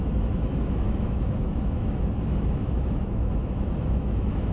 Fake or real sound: fake